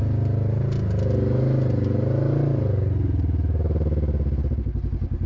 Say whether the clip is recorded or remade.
recorded